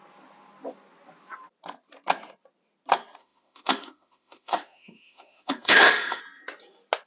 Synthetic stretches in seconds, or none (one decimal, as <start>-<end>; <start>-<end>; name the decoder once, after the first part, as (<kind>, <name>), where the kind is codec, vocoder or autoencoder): 3.2-6.2 (autoencoder, DAC-VAE)